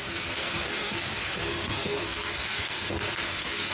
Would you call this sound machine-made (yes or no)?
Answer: yes